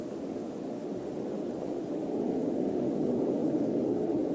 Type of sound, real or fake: fake